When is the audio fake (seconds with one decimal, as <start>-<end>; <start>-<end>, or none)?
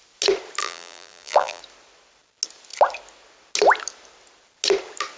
0.6-1.6